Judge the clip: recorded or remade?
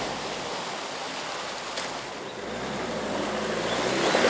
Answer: recorded